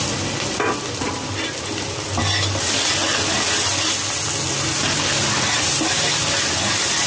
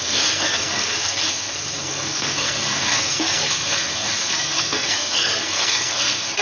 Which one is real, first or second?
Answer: first